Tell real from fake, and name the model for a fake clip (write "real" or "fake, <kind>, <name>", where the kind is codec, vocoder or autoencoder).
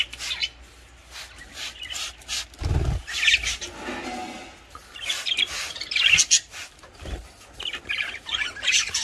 real